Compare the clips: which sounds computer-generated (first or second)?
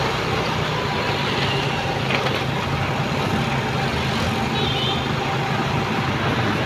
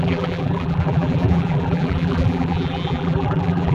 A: second